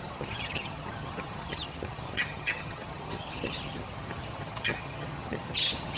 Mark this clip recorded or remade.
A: remade